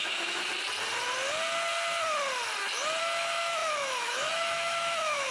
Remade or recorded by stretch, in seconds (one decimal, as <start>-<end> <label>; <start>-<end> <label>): 0.0-0.5 remade; 0.5-3.0 recorded; 3.0-5.3 remade